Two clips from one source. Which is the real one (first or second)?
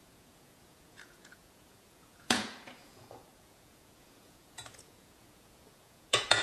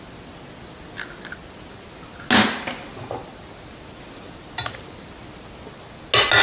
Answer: second